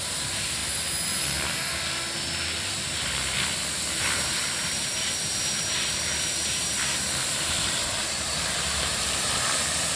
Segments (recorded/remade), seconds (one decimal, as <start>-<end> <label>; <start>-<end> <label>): 0.0-0.6 remade; 0.6-4.0 recorded; 4.0-10.0 remade